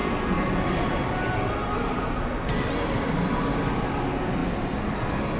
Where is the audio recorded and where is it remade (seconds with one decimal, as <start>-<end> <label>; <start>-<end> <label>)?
0.0-5.4 recorded